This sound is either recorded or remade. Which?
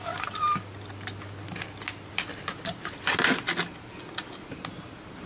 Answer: recorded